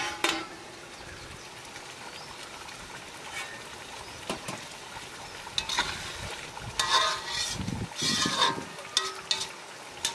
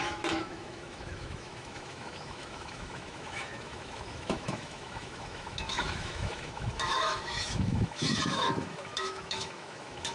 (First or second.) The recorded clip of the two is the first